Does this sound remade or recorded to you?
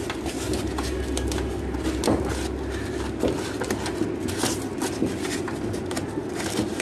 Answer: recorded